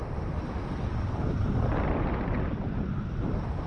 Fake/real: fake